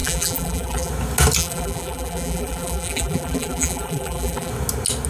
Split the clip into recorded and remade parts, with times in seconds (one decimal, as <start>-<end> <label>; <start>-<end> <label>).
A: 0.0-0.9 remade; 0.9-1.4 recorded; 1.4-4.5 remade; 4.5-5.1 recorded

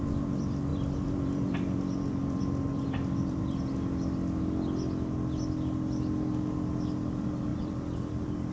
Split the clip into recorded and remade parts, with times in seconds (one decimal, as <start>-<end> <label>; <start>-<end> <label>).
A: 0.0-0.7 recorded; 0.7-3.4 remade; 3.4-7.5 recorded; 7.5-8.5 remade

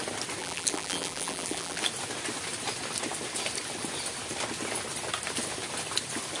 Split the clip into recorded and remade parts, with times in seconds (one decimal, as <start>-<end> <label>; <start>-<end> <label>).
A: 0.0-0.4 recorded; 0.4-1.8 remade; 1.8-6.4 recorded

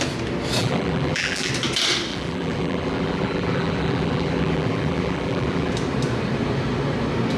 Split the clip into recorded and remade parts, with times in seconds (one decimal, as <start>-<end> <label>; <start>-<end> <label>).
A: 0.0-0.6 recorded; 0.6-1.5 remade; 1.5-2.1 recorded; 2.1-5.7 remade; 5.7-7.4 recorded

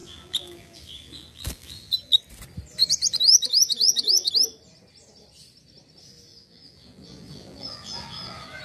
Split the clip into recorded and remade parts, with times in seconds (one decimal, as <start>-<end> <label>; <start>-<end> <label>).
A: 0.0-2.2 remade; 2.2-2.8 recorded; 2.8-4.3 remade; 4.3-6.3 recorded; 6.3-8.6 remade

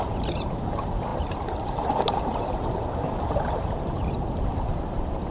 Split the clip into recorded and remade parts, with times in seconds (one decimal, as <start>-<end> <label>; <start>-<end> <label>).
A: 0.0-5.3 remade

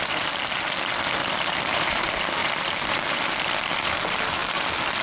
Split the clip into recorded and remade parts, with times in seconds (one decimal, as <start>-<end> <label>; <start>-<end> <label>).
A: 0.0-1.2 recorded; 1.2-2.0 remade; 2.0-2.4 recorded; 2.4-3.3 remade; 3.3-5.0 recorded

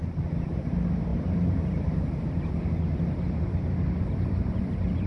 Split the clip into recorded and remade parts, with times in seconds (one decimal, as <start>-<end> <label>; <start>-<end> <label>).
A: 0.0-1.1 recorded; 1.1-2.0 remade; 2.0-5.1 recorded